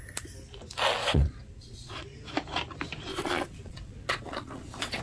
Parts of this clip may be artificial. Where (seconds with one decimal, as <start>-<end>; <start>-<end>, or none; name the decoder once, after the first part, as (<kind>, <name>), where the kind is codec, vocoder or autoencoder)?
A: 1.0-2.0 (vocoder, Vocos); 3.1-5.0